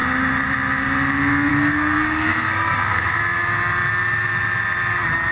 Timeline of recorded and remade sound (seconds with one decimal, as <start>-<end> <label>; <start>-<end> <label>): 0.0-1.5 recorded; 1.5-3.2 remade; 3.2-5.3 recorded